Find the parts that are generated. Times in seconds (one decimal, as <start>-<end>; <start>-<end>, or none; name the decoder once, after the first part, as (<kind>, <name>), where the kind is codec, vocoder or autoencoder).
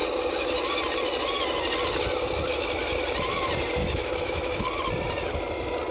3.8-4.6 (autoencoder, DAC-VAE)